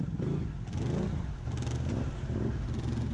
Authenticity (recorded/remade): recorded